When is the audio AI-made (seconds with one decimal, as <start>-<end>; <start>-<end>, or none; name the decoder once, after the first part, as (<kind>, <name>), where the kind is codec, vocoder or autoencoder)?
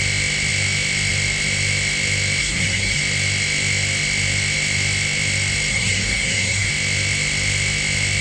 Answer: 2.4-3.0 (codec, SNAC); 5.7-6.7